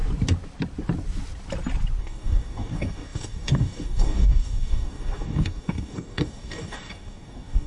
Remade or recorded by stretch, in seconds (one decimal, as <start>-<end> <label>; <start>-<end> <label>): 0.0-2.0 recorded; 2.0-7.7 remade